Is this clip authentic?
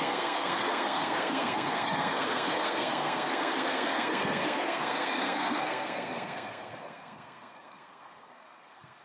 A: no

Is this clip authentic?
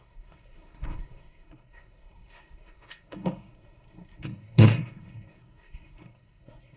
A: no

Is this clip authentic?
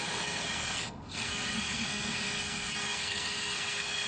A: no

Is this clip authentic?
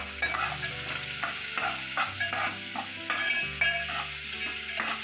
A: yes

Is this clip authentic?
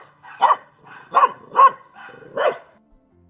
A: yes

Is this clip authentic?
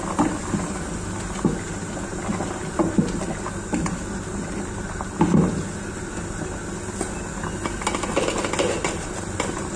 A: yes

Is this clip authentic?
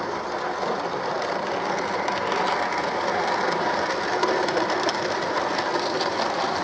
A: yes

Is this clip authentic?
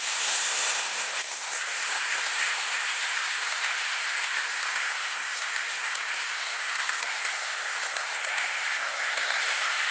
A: no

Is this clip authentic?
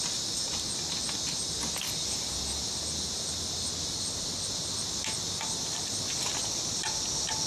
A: yes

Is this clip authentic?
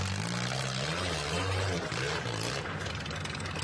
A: yes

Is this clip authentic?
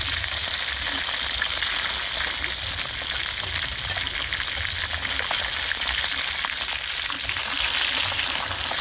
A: yes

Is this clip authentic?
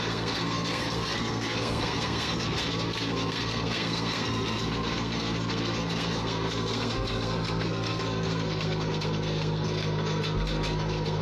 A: no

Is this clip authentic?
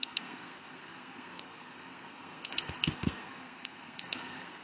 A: no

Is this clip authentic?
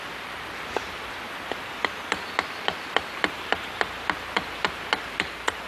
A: yes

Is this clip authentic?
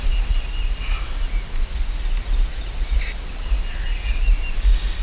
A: yes